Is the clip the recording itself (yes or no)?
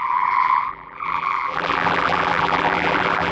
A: no